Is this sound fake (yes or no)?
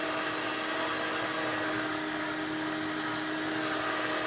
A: no